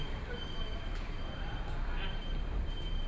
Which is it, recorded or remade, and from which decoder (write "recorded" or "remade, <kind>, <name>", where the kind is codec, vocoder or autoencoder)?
remade, vocoder, BigVGAN v2